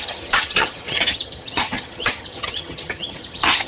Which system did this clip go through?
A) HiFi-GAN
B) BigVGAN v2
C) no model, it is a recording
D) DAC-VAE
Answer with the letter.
A